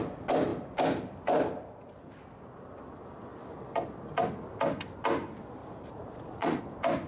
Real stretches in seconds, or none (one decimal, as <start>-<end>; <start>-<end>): 0.0-5.6; 6.6-7.1